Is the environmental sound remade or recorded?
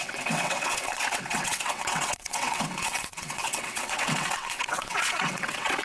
remade